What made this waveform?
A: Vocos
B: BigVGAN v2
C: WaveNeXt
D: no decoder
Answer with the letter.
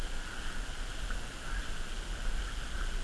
D